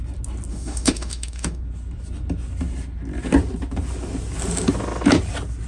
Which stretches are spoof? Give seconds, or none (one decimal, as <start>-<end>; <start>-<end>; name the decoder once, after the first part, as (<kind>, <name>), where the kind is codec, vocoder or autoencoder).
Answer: 0.5-1.6 (autoencoder, DAC-VAE)